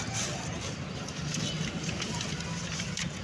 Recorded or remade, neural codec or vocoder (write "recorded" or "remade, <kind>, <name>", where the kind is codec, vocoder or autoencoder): recorded